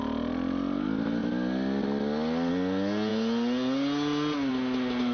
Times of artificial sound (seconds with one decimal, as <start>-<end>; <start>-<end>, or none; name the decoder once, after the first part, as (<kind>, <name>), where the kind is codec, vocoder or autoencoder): none